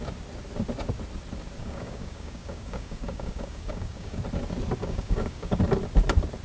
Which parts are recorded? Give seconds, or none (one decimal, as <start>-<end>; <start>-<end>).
0.0-1.6; 4.2-4.8; 5.6-6.4